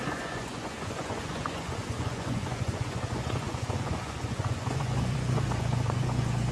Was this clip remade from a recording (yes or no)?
yes